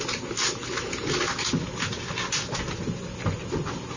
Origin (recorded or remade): recorded